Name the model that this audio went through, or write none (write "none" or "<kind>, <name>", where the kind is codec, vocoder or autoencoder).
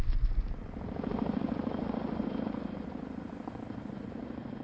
none